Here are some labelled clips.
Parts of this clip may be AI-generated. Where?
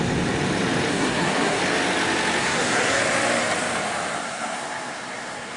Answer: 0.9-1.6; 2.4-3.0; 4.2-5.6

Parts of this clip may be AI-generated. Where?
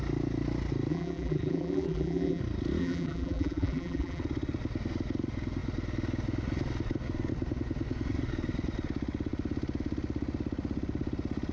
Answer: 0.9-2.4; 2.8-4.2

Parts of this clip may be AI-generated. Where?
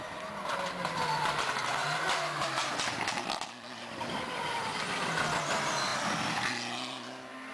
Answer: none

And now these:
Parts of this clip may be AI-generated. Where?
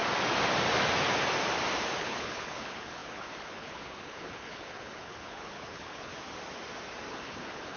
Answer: 2.0-6.1; 7.1-7.8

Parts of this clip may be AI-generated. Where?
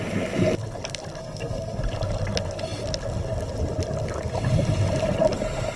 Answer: 1.2-1.8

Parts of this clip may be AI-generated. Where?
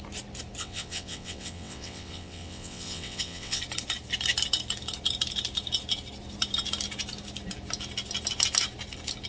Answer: 0.6-3.6